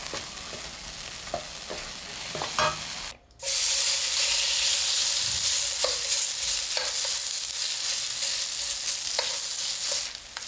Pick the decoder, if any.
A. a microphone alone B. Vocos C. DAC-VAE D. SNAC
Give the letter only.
A